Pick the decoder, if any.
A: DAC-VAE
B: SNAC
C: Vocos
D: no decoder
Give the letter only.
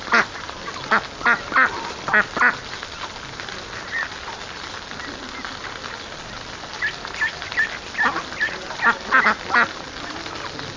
D